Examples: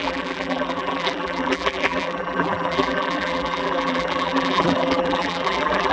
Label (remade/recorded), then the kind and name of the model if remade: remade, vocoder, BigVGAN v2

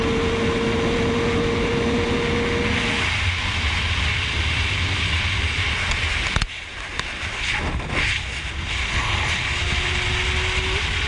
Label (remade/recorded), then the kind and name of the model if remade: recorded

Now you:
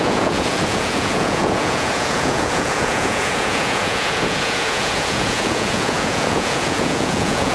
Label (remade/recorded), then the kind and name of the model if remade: remade, vocoder, Vocos